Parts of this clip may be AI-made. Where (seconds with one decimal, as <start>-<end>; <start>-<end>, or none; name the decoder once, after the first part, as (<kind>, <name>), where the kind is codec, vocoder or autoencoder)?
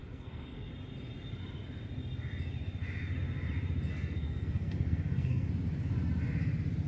0.0-0.7 (codec, SNAC); 3.9-5.5